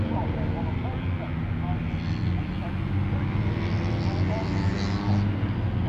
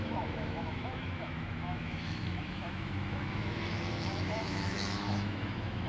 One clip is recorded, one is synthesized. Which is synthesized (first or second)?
second